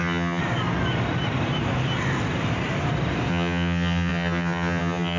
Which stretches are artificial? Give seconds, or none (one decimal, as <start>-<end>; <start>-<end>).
0.0-0.4; 3.3-5.2